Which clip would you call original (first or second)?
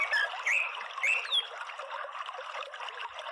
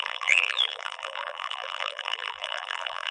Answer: first